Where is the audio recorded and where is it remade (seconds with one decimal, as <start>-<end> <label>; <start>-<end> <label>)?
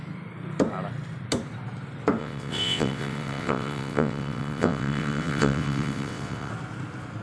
0.0-2.2 recorded; 2.2-6.5 remade; 6.5-7.2 recorded